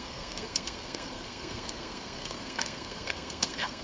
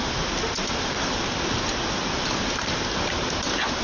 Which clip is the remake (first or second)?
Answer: first